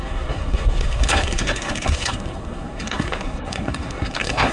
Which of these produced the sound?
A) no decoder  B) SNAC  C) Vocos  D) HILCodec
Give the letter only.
B